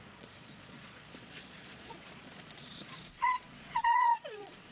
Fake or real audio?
fake